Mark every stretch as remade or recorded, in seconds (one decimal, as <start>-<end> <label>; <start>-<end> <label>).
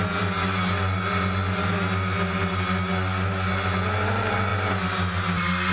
0.0-5.7 recorded